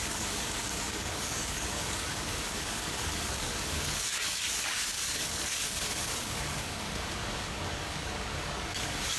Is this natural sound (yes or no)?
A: no